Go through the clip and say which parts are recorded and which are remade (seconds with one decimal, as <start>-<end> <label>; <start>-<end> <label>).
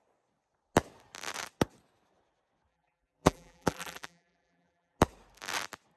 0.0-2.7 recorded; 2.7-5.0 remade; 5.0-6.0 recorded